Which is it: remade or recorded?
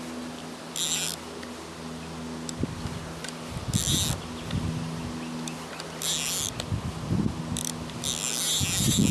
recorded